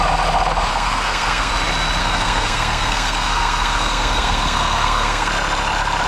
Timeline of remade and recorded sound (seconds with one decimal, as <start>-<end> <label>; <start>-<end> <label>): 0.0-0.7 recorded; 0.7-1.5 remade; 1.5-2.0 recorded; 2.0-5.3 remade; 5.3-6.1 recorded